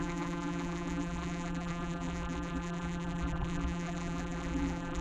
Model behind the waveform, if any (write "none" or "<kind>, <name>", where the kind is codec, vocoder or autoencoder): vocoder, BigVGAN v2